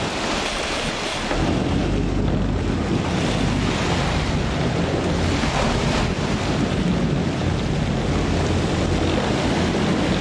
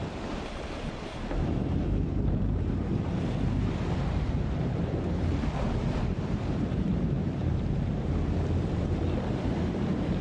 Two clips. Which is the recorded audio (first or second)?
first